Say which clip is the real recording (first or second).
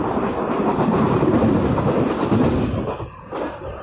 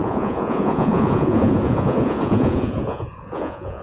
first